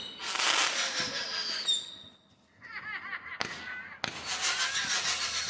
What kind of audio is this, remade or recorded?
recorded